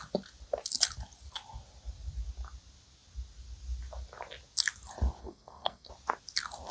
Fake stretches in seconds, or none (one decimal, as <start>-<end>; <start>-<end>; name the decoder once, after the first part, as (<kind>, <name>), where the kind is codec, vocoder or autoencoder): 5.2-5.9 (codec, SNAC)